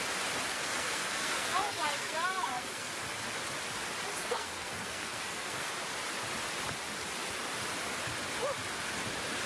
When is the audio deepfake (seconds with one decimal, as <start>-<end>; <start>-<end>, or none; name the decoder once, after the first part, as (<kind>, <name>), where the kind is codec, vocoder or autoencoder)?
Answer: 0.5-2.9 (codec, SNAC); 4.2-5.7